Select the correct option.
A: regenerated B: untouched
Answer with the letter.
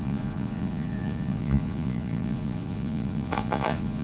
A